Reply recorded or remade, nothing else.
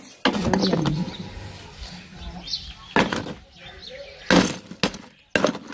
recorded